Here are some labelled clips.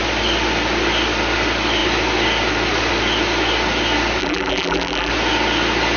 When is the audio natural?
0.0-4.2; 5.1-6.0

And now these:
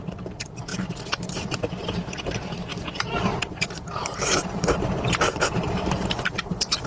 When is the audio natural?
none

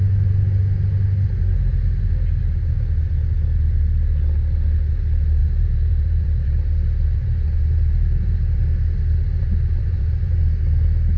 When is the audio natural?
0.0-5.4; 8.6-9.4; 10.4-11.2

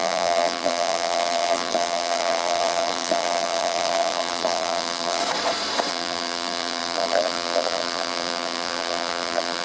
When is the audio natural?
5.2-5.9

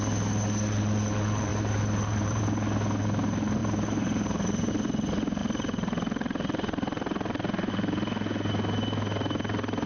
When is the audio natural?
0.0-1.5; 2.4-3.6; 4.7-5.4; 7.7-9.9

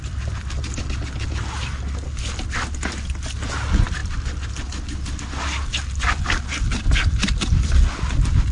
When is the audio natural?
0.0-8.5

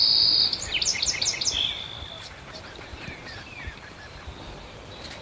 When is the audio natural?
0.0-5.2